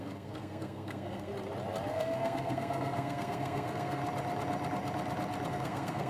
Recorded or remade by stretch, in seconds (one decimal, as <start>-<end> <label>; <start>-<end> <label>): 0.0-1.3 remade; 1.3-1.9 recorded; 1.9-4.0 remade; 4.0-5.5 recorded; 5.5-6.1 remade